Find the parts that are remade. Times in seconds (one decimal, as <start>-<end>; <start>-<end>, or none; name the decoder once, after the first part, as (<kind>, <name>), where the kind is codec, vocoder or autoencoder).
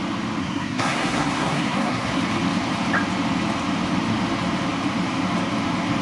0.4-2.2 (codec, SNAC)